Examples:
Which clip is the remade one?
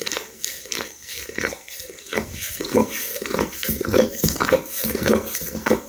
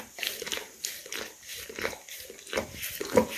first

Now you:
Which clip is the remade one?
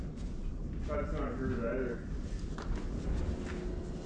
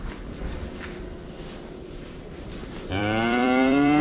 second